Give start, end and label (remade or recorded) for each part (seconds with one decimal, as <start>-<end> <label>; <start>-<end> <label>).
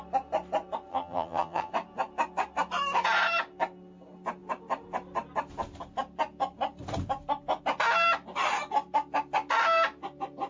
0.0-0.9 recorded; 0.9-1.7 remade; 1.7-10.5 recorded